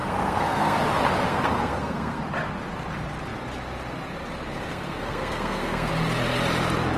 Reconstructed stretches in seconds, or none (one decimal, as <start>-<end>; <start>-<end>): 0.0-0.8; 1.3-2.2; 4.7-5.9